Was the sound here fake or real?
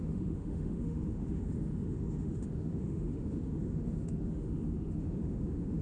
fake